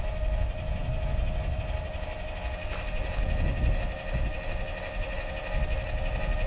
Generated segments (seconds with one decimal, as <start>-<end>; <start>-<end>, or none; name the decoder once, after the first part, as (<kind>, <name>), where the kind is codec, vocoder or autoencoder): none

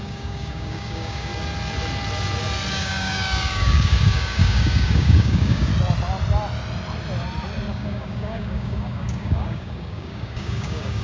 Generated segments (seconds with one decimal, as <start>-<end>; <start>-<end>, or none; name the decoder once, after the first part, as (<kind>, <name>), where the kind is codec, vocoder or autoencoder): 0.0-1.3 (codec, DAC); 2.7-5.7; 7.7-11.0

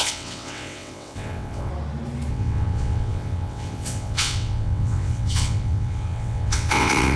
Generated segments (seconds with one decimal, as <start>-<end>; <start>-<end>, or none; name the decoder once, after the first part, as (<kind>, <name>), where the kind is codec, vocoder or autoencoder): 0.0-1.7 (vocoder, WaveNeXt); 2.3-7.2